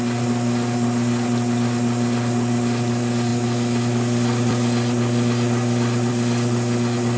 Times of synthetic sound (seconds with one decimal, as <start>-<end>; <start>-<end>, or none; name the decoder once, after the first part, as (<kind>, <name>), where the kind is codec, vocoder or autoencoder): none